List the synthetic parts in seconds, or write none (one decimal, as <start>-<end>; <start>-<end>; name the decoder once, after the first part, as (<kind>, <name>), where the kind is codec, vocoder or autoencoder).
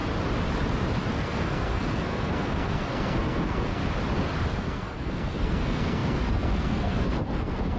1.1-3.8 (codec, SNAC); 4.5-7.8